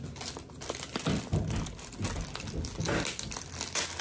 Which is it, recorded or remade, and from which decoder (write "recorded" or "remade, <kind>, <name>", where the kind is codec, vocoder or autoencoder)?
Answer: recorded